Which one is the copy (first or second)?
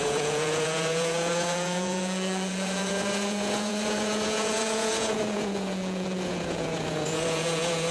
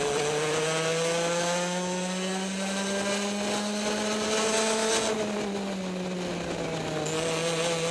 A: first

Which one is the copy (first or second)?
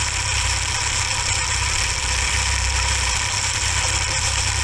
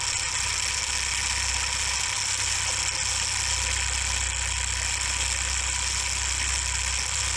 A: first